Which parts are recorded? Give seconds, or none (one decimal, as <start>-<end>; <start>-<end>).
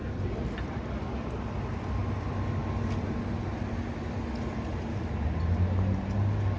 2.6-6.6